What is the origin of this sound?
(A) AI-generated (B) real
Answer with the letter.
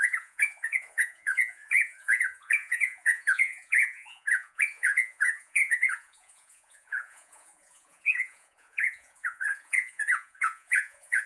A